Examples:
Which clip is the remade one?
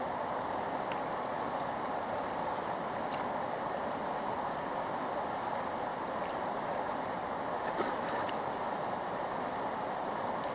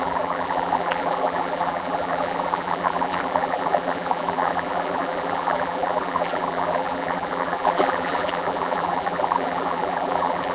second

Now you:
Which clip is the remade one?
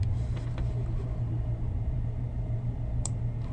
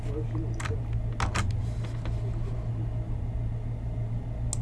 first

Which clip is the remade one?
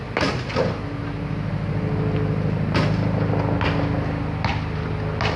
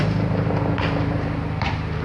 second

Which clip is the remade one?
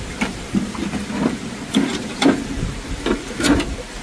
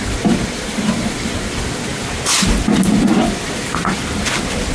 first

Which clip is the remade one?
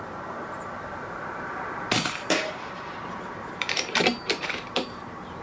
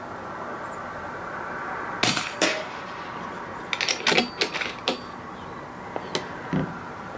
first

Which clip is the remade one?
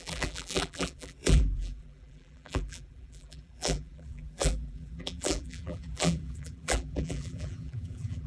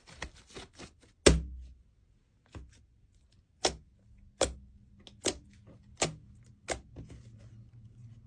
first